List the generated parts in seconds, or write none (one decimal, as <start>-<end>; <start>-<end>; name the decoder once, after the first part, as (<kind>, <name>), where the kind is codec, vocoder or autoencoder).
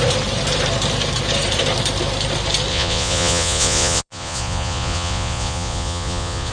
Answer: 2.7-6.5 (vocoder, Vocos)